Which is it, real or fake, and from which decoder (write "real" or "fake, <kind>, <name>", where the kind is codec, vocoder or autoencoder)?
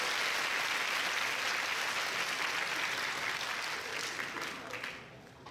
real